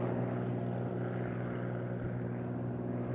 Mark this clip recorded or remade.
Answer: recorded